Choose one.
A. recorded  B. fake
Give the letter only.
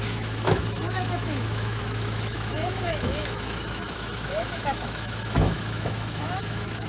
B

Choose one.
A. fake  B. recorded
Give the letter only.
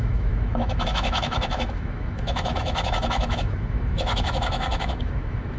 A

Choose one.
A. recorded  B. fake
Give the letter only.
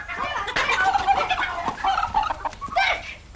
A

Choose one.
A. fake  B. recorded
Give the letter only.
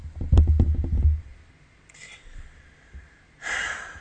B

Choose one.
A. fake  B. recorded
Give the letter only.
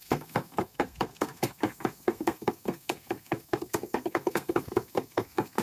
A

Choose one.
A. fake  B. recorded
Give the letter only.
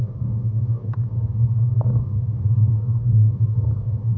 A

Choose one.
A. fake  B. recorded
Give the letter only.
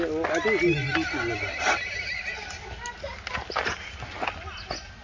B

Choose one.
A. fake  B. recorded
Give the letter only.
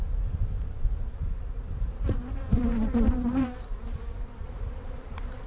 A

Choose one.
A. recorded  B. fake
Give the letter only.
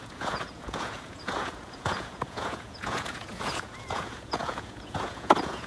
B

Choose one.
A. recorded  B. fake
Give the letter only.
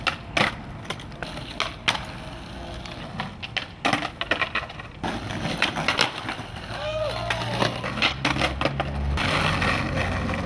A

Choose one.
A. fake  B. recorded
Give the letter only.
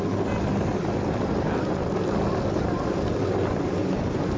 B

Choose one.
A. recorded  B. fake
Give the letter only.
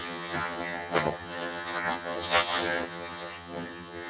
B